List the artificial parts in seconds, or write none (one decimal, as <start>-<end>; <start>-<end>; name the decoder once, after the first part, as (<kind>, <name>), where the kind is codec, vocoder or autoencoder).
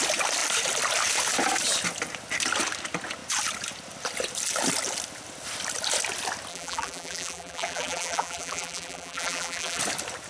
6.5-9.8 (vocoder, BigVGAN v2)